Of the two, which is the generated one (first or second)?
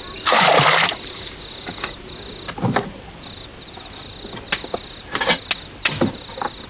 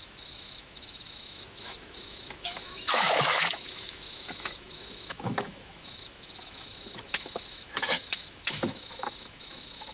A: second